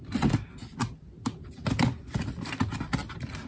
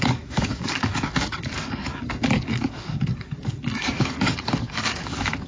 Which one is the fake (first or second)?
second